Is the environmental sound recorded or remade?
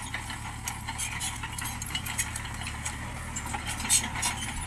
recorded